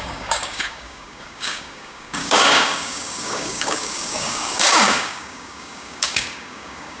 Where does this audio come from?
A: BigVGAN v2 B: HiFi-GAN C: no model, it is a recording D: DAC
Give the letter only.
D